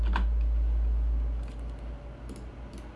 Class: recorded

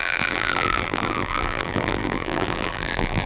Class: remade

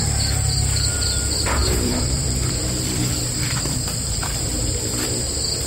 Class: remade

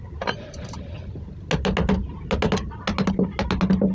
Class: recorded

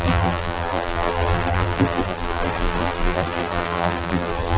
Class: remade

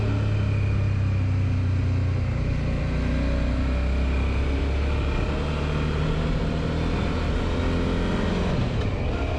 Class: recorded